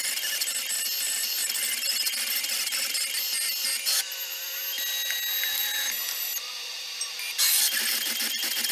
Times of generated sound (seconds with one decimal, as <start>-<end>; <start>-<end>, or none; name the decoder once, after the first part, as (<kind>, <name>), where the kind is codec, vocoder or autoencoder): none